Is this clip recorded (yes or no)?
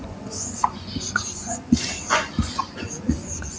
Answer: no